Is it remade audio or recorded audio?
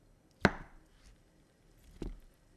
recorded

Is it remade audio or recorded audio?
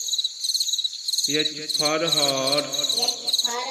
recorded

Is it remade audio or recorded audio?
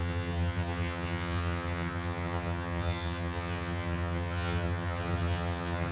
remade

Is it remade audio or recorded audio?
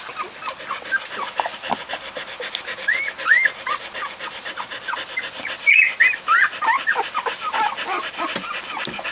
recorded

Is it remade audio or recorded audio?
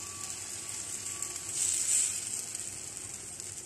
recorded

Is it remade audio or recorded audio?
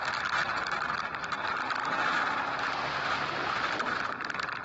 remade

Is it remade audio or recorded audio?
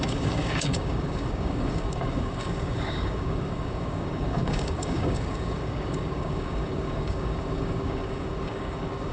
remade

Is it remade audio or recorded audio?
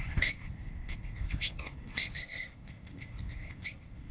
remade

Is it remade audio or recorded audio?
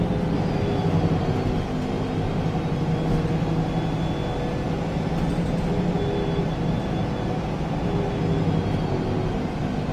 recorded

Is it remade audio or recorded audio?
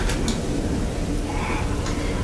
recorded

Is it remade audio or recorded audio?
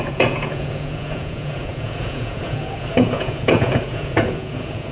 remade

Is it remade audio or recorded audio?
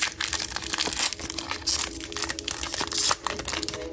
recorded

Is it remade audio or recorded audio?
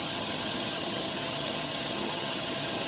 remade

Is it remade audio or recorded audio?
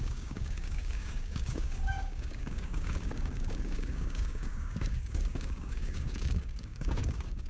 remade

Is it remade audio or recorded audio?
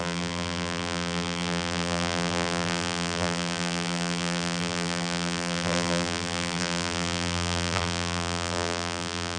remade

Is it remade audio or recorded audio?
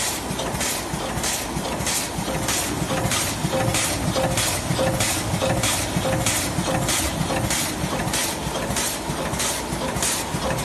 recorded